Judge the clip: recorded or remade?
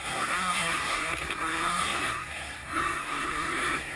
remade